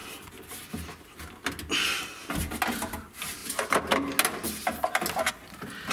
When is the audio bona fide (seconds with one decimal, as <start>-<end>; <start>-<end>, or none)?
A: 0.0-5.9